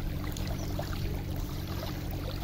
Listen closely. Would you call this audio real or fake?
real